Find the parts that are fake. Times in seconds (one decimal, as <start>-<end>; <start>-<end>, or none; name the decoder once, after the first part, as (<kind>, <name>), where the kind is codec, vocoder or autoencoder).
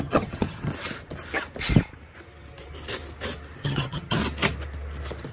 0.0-0.7 (vocoder, HiFi-GAN); 3.6-4.2